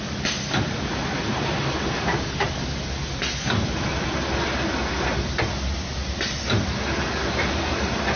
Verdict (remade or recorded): recorded